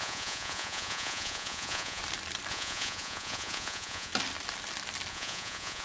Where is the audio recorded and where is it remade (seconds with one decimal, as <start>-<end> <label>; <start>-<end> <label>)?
0.0-2.0 remade; 2.0-2.5 recorded; 2.5-4.1 remade; 4.1-5.1 recorded; 5.1-5.8 remade